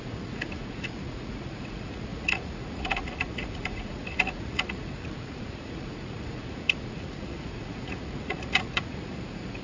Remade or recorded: remade